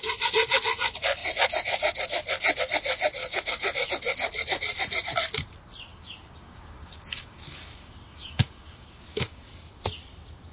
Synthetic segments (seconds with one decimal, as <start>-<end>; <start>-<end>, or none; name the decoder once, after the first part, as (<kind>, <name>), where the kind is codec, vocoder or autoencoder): 3.2-3.9 (codec, DAC); 5.9-9.5